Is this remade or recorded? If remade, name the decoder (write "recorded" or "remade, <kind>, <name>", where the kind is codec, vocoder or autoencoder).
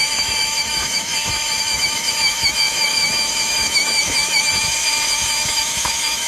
remade, autoencoder, DAC-VAE